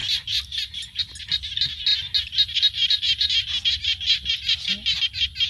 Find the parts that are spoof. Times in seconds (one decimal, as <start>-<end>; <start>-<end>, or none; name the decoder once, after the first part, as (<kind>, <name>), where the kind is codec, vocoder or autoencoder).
none

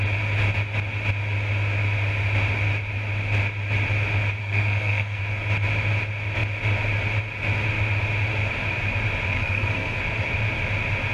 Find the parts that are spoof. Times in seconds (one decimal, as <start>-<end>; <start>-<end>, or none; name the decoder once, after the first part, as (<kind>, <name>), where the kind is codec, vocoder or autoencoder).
4.4-5.2 (codec, SNAC); 9.3-10.0